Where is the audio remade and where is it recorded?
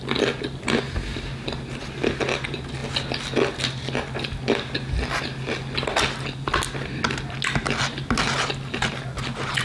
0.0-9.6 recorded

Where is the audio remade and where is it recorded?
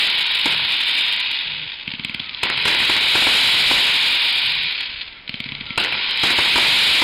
0.0-7.0 recorded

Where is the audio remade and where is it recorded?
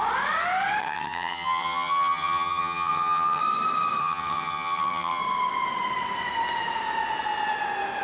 0.0-0.8 recorded; 0.8-3.4 remade; 3.4-4.0 recorded; 4.0-5.2 remade; 5.2-8.0 recorded